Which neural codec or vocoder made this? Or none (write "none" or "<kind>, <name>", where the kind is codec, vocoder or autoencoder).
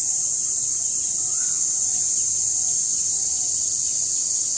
none